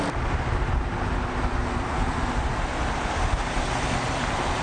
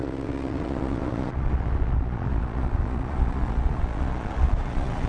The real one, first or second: first